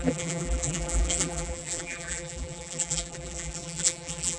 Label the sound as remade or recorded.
remade